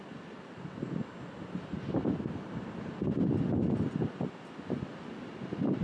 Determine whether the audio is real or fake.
real